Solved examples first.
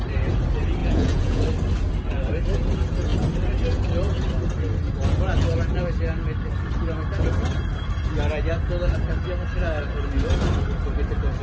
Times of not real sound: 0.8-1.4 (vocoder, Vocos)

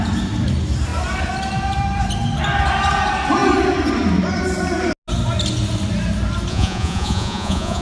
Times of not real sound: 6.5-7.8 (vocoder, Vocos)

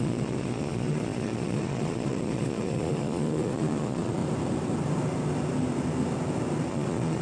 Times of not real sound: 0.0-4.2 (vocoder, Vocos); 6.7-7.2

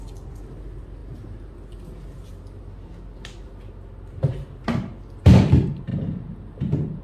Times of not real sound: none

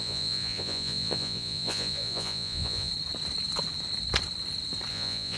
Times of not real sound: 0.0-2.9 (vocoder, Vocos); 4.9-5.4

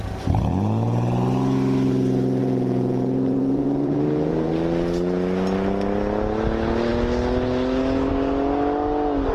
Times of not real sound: 2.4-4.5 (vocoder, Vocos)

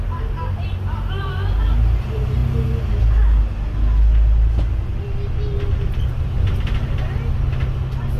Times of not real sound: none

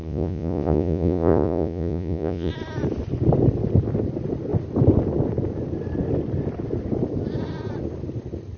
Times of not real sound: 0.0-2.5 (vocoder, Vocos)